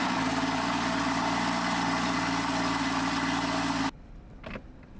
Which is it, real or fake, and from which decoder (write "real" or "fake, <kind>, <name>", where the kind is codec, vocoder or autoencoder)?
real